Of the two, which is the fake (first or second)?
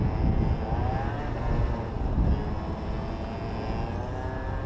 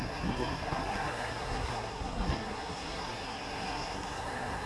second